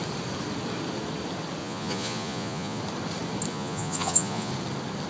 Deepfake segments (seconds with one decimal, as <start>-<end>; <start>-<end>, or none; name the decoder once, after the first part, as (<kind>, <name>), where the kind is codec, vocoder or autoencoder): 1.6-2.8 (vocoder, Vocos); 3.5-4.5